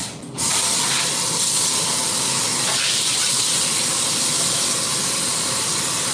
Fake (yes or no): no